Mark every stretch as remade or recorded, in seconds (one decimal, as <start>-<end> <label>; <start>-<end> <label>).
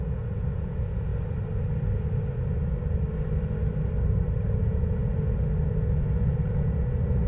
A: 0.0-1.1 remade; 1.1-4.5 recorded; 4.5-5.0 remade; 5.0-5.9 recorded; 5.9-7.3 remade